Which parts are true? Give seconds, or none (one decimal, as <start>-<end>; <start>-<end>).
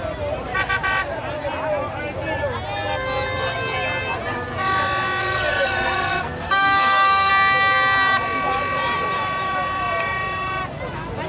0.0-5.2; 7.3-11.3